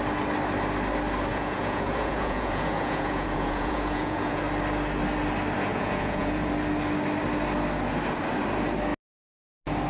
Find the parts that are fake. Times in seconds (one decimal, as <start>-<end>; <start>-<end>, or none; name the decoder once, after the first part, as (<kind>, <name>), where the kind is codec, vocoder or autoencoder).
1.3-4.4 (vocoder, Vocos); 5.7-6.5

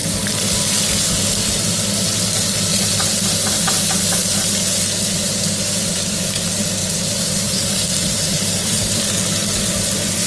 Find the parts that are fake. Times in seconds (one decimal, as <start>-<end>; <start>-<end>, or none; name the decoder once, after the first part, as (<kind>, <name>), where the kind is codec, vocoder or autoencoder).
5.2-6.3 (vocoder, BigVGAN v2); 6.8-9.1